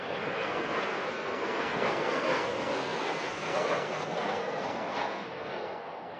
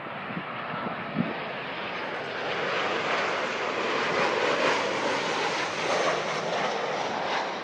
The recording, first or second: second